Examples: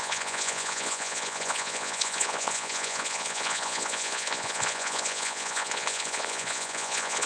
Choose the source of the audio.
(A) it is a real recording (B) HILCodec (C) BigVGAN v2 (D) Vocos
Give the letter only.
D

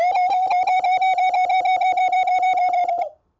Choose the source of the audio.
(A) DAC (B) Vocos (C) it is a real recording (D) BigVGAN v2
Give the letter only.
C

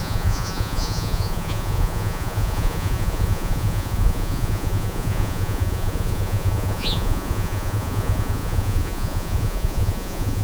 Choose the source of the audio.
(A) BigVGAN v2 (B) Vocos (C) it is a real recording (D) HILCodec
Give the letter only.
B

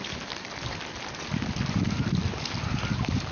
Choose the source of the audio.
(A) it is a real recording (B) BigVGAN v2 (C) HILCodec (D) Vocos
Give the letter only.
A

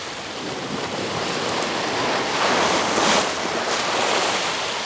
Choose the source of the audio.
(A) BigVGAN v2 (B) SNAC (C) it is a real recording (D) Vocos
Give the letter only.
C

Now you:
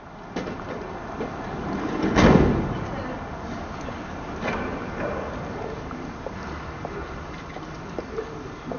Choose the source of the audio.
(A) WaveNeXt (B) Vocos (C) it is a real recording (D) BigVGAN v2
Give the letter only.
C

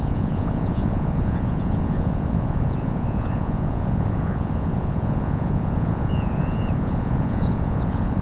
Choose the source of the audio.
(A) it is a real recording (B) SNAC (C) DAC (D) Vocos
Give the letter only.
D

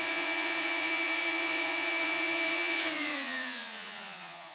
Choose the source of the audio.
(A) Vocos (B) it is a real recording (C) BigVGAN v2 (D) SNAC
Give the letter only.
A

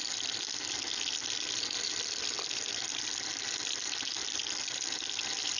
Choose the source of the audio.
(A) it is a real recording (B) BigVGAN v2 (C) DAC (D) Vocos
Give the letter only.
A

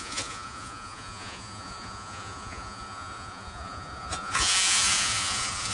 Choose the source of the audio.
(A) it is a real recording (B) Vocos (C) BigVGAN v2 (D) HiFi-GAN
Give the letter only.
B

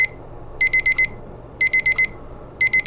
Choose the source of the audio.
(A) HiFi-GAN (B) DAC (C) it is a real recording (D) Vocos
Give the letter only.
C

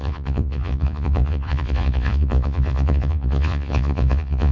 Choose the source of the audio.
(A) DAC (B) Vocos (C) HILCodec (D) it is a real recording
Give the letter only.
B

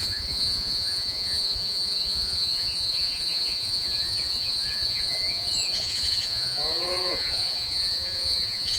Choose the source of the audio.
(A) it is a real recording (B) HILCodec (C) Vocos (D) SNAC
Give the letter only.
C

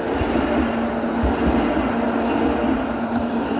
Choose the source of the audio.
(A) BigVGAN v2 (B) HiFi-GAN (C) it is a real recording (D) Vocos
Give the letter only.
C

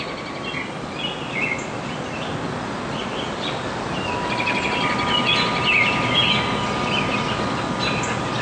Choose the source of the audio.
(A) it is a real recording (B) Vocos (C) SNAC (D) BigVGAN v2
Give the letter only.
A